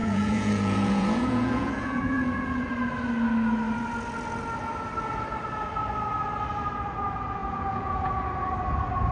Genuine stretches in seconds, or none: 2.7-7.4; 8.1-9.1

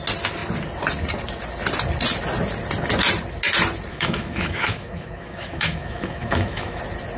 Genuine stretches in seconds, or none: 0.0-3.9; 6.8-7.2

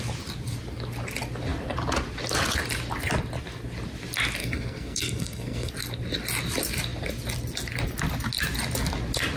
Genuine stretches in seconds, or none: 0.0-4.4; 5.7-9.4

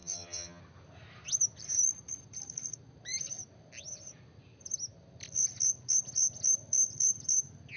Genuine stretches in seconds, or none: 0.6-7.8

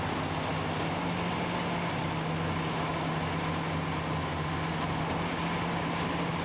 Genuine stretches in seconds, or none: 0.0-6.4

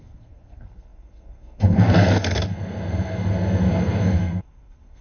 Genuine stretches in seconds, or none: none